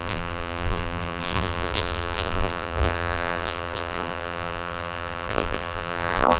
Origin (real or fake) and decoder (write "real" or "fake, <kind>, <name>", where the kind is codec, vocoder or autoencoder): fake, vocoder, BigVGAN v2